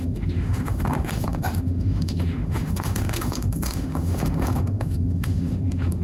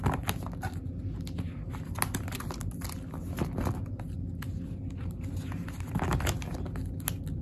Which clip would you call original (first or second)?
second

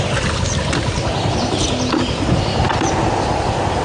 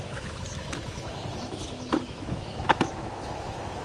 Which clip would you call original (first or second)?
first